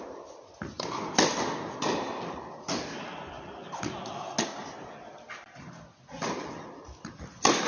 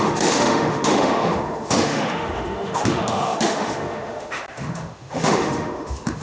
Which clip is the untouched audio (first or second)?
first